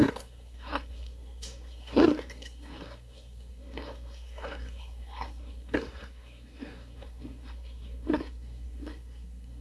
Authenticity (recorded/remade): remade